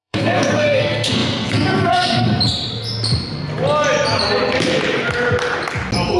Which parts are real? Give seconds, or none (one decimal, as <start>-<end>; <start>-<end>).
2.3-6.2